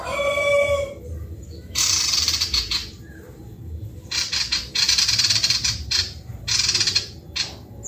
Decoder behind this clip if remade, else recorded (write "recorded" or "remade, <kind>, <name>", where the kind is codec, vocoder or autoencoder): remade, vocoder, BigVGAN v2